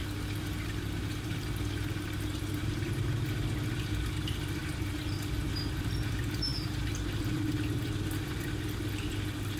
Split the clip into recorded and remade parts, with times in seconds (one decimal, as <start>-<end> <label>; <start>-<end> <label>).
0.0-3.5 remade; 3.5-4.6 recorded; 4.6-6.1 remade; 6.1-9.6 recorded